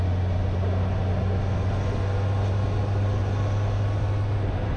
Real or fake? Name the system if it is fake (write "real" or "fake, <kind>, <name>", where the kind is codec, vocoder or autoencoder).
real